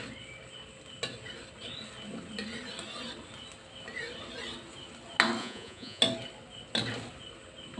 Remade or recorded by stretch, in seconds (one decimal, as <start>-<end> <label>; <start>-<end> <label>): 0.0-5.4 recorded; 5.4-6.0 remade; 6.0-7.8 recorded